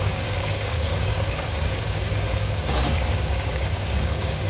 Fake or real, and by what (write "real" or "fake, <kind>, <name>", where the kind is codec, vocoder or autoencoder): fake, codec, DAC